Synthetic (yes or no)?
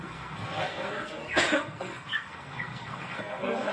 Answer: yes